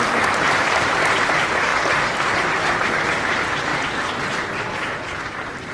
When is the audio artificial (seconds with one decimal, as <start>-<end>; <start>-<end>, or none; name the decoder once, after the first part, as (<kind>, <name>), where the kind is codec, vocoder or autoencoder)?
none

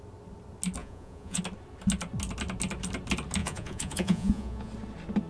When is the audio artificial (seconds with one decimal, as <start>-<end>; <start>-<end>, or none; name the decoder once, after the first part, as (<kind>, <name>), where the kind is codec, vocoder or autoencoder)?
0.8-1.4 (vocoder, Vocos); 3.4-4.7

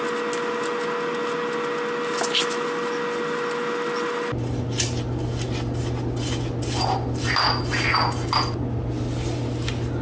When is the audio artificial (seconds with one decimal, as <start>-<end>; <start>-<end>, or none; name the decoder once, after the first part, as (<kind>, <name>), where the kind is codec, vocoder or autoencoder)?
none

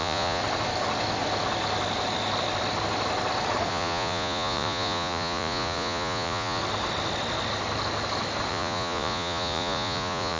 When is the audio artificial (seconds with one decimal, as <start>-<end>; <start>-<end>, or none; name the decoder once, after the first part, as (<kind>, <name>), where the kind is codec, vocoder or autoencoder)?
0.0-0.4 (vocoder, Vocos); 3.7-6.6; 8.5-10.4

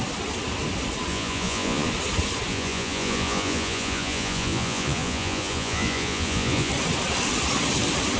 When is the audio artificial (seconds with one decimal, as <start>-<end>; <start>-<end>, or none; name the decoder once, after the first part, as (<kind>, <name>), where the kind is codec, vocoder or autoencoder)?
1.1-1.9 (vocoder, Vocos); 2.5-6.7

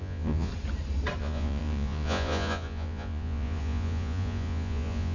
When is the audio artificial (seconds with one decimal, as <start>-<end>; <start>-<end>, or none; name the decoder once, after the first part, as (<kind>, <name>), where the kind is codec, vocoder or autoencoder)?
0.0-0.5 (vocoder, Vocos); 1.2-5.1

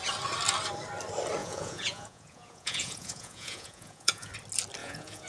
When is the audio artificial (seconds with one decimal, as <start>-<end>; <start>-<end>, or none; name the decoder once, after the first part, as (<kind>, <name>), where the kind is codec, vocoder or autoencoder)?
1.4-4.3 (vocoder, Vocos); 4.8-5.3

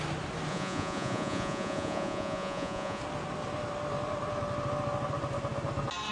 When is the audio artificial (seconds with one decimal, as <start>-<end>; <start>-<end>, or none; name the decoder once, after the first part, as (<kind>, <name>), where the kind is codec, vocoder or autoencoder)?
0.5-3.0 (vocoder, Vocos)